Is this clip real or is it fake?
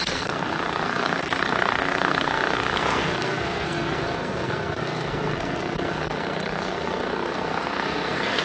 fake